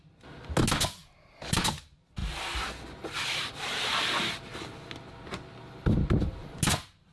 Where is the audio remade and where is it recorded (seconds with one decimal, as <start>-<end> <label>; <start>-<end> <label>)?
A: 0.0-7.1 recorded